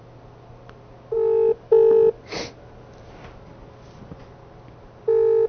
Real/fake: real